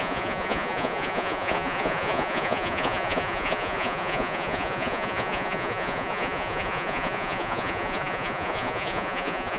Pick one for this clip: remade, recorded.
remade